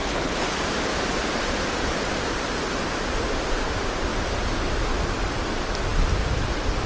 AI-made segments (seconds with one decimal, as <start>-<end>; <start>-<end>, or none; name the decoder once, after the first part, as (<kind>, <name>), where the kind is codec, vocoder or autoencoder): 0.0-0.6 (codec, HILCodec)